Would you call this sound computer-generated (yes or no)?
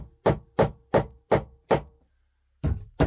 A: no